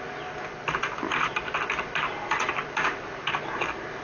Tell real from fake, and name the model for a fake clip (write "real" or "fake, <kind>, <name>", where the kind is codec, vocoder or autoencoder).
real